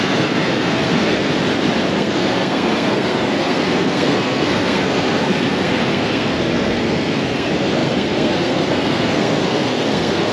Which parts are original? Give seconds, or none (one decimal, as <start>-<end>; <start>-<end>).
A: 1.3-1.9